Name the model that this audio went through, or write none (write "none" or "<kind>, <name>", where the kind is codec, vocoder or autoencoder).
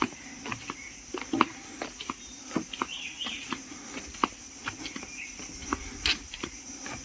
none